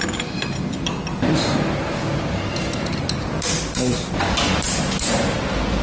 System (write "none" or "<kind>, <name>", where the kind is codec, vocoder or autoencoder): none